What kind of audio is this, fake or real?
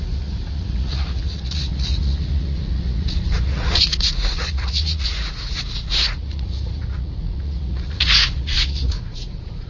fake